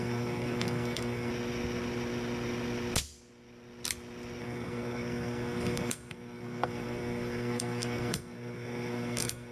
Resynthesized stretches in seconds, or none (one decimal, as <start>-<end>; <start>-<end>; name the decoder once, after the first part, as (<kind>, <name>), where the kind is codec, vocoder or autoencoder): 0.0-1.3 (codec, SNAC); 4.4-9.5